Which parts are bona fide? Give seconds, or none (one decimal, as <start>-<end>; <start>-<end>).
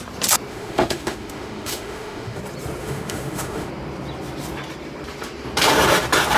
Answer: 0.0-0.5; 2.4-2.8; 3.7-6.4